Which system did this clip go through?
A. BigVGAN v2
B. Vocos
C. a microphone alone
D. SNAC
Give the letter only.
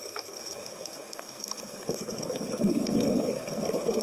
D